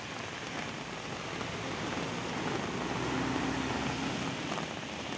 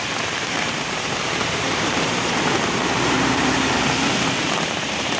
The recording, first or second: first